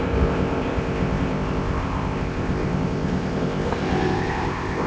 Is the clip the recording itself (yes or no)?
no